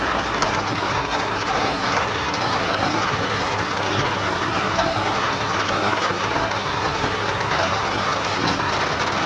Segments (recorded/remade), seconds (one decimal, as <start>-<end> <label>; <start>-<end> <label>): 0.0-8.7 remade; 8.7-9.3 recorded